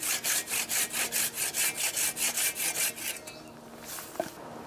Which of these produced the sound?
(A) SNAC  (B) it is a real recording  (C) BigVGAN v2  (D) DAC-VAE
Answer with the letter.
B